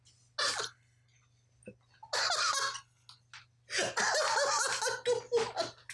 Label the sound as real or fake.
real